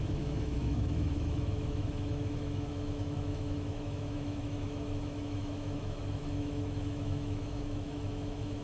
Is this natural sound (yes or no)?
no